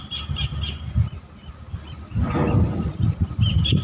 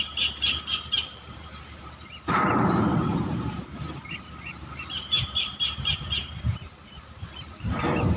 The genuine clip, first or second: first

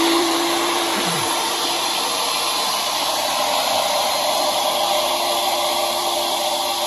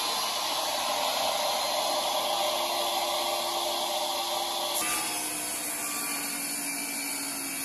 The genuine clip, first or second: second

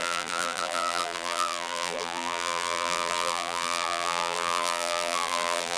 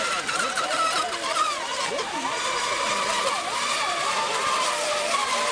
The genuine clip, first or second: second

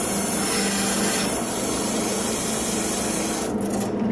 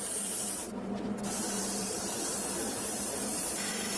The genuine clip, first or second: first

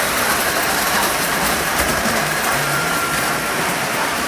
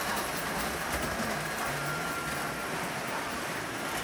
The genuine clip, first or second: second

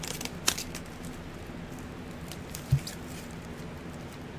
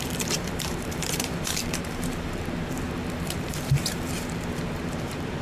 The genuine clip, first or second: first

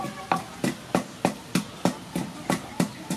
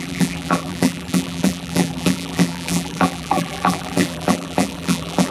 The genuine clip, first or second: first